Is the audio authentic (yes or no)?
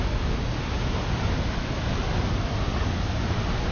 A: yes